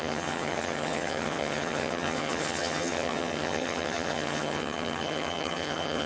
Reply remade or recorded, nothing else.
remade